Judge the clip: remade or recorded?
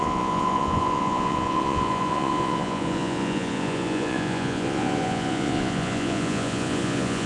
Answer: remade